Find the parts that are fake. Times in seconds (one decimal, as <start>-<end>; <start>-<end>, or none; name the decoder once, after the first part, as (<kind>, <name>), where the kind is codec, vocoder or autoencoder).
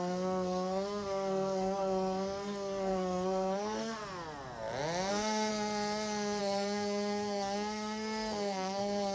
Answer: 0.0-4.0 (codec, SNAC); 5.1-5.5; 6.4-9.1